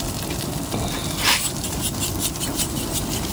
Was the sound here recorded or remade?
remade